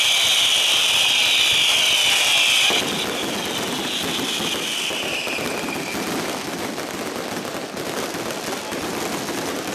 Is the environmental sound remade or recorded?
recorded